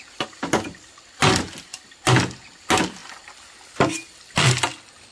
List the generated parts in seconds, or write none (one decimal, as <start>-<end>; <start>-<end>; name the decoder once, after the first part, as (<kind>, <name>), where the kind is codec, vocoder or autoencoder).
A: 3.0-5.1 (vocoder, BigVGAN v2)